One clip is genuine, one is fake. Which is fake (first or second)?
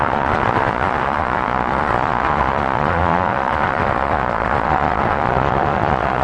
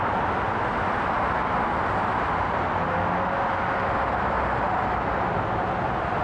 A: first